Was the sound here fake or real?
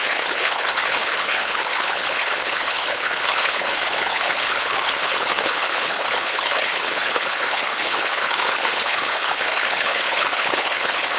fake